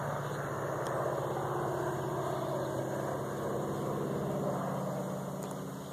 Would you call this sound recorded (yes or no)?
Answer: yes